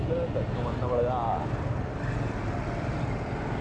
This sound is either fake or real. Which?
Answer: real